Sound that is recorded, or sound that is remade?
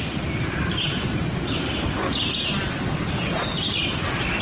recorded